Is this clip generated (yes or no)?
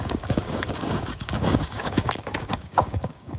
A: yes